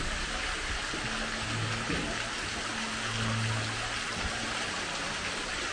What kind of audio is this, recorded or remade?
recorded